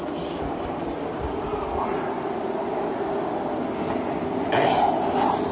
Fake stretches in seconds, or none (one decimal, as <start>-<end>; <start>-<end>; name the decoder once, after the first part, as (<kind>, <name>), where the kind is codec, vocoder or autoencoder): none